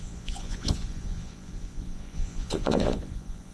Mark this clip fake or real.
fake